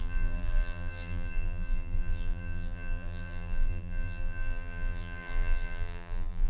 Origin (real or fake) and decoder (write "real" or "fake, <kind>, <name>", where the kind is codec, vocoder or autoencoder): fake, vocoder, BigVGAN v2